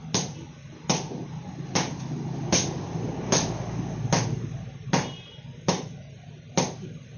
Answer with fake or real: real